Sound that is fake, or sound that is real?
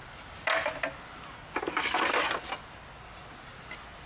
real